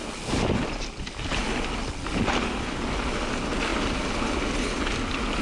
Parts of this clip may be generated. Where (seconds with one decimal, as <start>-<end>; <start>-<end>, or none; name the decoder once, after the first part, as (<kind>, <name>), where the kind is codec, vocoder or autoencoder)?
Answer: none